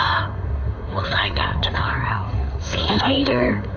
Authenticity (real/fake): fake